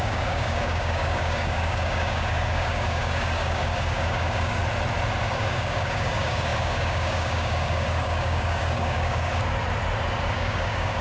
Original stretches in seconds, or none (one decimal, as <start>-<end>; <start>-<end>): 4.6-5.2; 9.3-10.3